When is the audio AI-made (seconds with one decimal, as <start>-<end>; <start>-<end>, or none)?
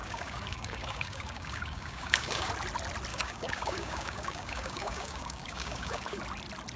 0.0-2.5; 3.1-6.2